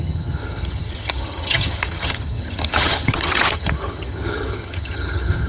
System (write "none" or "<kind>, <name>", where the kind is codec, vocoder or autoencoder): vocoder, HiFi-GAN